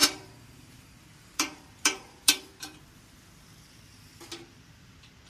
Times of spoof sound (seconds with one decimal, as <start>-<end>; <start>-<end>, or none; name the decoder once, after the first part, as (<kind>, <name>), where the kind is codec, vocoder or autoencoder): 0.0-2.8 (vocoder, BigVGAN v2)